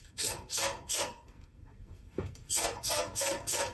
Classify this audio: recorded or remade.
remade